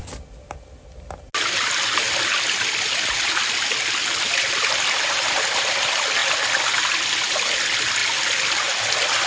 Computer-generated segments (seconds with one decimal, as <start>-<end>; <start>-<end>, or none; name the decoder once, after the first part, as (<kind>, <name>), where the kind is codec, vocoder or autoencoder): 6.2-7.0 (vocoder, BigVGAN v2)